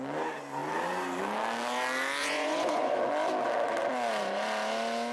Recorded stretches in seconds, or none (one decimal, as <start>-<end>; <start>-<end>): 0.0-2.2; 3.0-5.1